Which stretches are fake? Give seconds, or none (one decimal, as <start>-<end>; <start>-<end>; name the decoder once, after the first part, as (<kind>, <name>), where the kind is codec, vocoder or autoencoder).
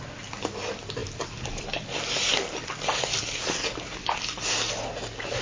1.0-1.6 (vocoder, BigVGAN v2); 2.3-4.7